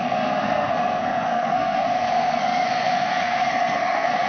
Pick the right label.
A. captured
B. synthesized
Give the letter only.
B